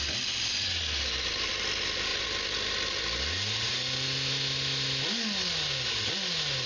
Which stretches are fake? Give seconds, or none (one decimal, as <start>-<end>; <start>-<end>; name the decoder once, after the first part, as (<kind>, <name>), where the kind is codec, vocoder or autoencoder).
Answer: none